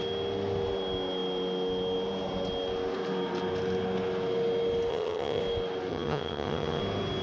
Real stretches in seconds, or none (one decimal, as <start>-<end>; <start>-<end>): 0.0-4.9; 5.4-5.9; 6.8-7.2